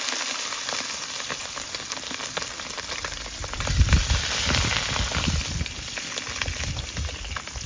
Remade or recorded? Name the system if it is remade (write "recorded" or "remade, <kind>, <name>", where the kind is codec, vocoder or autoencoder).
recorded